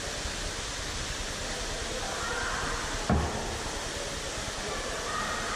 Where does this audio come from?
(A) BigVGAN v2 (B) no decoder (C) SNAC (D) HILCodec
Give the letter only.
B